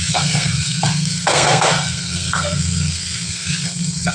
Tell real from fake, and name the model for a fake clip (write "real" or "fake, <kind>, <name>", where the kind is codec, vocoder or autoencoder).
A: fake, codec, SNAC